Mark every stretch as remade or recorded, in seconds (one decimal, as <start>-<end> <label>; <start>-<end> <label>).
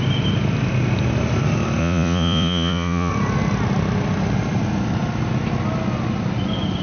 0.0-1.8 recorded; 1.8-3.1 remade; 3.1-6.8 recorded